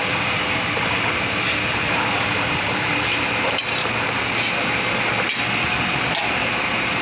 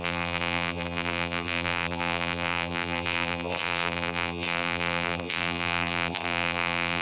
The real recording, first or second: first